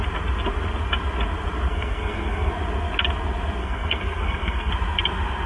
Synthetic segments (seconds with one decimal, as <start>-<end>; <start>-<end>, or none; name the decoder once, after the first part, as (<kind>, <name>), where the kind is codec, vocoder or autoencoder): 1.7-2.5 (codec, SNAC); 3.6-4.7